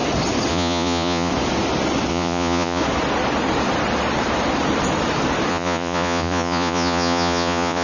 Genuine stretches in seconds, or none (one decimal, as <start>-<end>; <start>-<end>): 0.0-0.5; 1.3-2.1; 2.8-5.5